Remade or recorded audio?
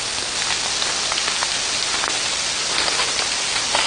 recorded